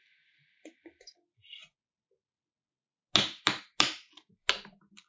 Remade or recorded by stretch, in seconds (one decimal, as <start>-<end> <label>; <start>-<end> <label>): 0.0-5.1 recorded